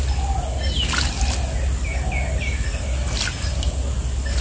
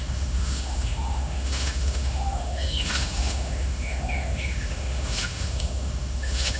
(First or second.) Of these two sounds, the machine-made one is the second